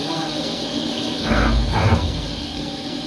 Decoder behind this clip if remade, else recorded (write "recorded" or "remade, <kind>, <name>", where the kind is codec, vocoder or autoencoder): remade, codec, SNAC